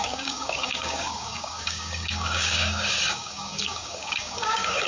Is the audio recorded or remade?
remade